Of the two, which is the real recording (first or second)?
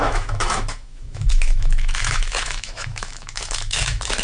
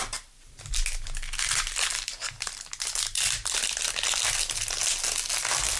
second